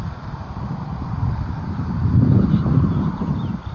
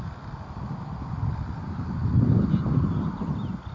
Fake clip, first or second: first